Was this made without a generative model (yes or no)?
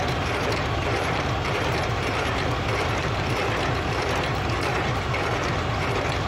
no